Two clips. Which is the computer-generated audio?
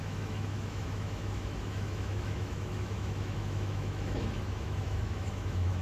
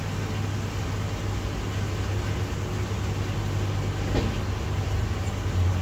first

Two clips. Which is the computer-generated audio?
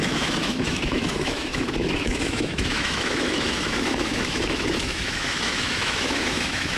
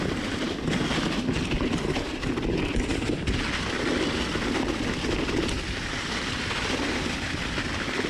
first